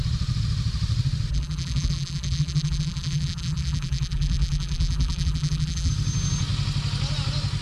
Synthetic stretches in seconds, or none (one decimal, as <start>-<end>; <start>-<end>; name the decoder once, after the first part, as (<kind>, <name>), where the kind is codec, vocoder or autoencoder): 1.3-5.9 (vocoder, BigVGAN v2)